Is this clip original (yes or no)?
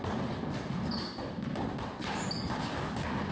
yes